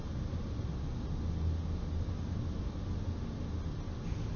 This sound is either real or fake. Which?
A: real